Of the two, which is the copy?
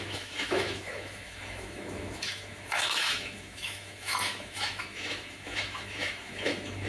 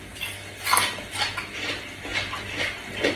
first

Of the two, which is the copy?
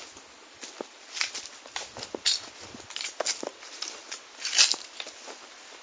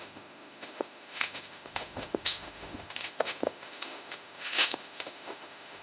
second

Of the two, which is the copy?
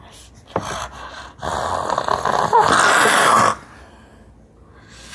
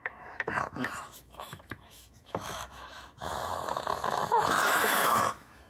second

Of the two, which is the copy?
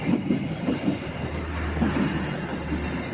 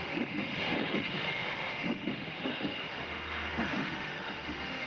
second